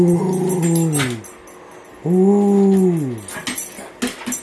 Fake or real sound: real